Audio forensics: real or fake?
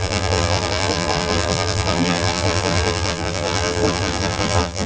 fake